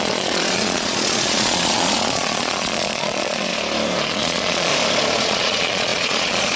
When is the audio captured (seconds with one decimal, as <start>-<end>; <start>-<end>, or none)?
3.5-4.1; 4.7-5.2